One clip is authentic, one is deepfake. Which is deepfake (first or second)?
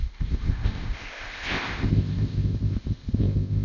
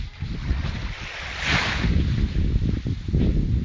first